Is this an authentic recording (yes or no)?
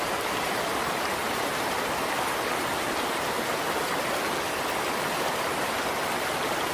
yes